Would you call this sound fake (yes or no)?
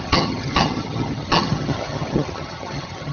yes